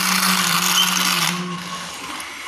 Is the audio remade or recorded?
recorded